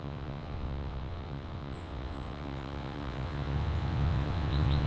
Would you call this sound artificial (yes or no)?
yes